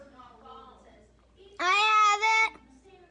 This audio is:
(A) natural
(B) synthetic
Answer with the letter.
A